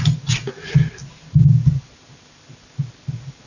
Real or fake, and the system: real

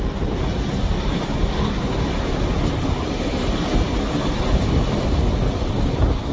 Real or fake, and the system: real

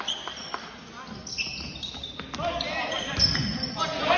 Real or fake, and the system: real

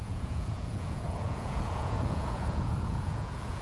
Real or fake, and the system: fake, vocoder, Vocos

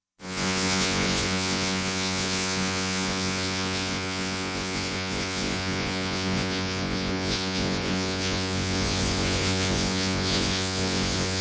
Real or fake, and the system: fake, vocoder, Vocos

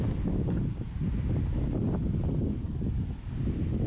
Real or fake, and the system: real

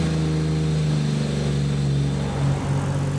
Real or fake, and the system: real